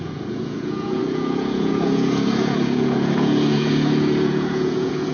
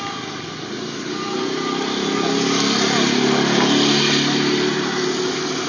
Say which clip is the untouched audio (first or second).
second